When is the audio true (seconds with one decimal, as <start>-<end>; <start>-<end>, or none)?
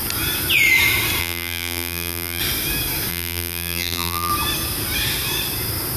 0.0-1.2; 2.4-3.1; 4.3-6.0